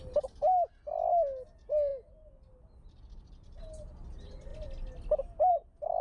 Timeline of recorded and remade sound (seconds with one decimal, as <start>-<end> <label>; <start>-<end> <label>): 0.0-6.0 recorded